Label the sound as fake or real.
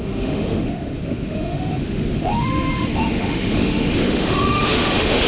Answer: fake